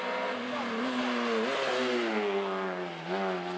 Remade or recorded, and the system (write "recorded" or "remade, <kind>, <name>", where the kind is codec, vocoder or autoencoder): recorded